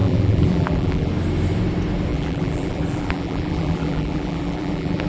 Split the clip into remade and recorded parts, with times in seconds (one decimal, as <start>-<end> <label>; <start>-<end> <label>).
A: 0.0-1.1 remade; 1.1-2.1 recorded; 2.1-5.1 remade